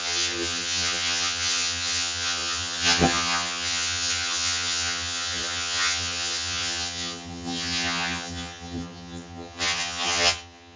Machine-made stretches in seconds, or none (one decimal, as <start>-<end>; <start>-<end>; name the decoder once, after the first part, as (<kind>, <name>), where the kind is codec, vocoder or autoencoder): 0.0-10.8 (vocoder, HiFi-GAN)